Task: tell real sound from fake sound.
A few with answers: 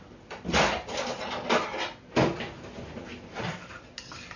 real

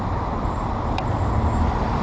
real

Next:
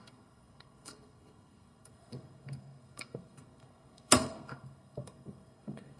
fake